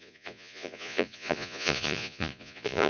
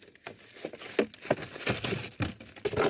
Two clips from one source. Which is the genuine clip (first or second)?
second